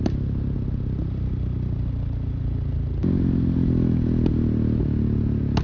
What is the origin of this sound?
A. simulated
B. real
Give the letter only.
B